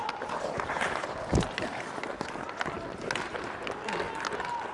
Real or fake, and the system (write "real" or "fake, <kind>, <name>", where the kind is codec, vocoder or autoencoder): real